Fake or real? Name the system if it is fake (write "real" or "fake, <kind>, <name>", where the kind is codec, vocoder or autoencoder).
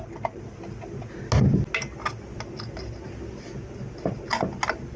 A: real